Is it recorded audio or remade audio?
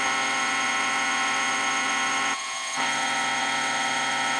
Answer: remade